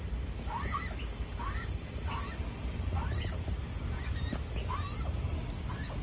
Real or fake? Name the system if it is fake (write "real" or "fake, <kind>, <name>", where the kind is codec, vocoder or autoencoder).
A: real